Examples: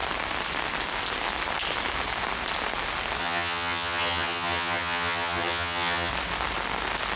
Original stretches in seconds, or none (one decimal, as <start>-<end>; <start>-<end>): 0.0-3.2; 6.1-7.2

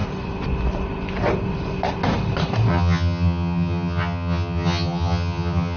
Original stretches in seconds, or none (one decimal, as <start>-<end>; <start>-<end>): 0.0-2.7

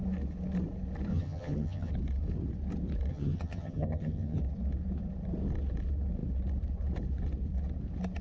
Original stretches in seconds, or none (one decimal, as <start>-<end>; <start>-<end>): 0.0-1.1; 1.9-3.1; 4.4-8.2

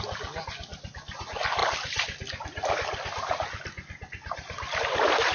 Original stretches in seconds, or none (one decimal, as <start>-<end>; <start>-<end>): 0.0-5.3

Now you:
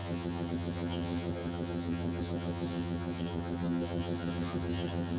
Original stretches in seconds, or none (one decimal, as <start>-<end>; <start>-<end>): none